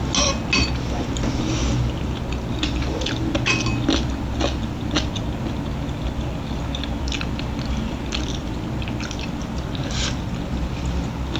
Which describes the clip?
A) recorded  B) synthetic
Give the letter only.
A